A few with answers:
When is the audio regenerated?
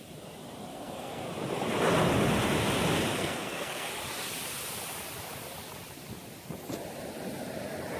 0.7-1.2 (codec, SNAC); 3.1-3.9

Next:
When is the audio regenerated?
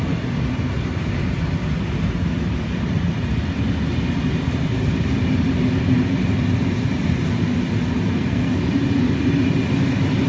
8.1-8.6 (codec, SNAC)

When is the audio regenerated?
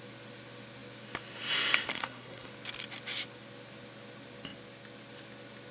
1.9-2.5 (codec, SNAC)